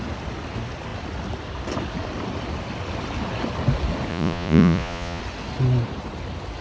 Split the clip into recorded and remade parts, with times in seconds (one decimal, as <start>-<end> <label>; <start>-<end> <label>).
0.0-4.1 recorded; 4.1-5.2 remade; 5.2-6.6 recorded